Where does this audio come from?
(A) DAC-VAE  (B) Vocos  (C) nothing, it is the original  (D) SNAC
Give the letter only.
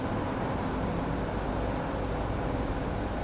C